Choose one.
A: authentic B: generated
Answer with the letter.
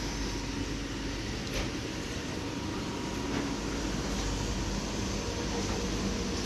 A